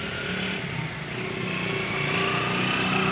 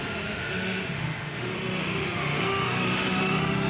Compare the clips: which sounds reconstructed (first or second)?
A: second